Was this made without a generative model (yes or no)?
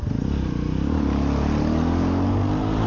yes